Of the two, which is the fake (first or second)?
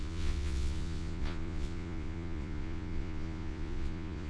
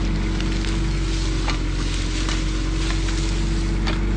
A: first